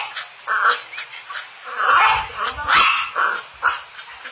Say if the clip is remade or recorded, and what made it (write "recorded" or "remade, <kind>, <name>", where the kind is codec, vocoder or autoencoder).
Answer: recorded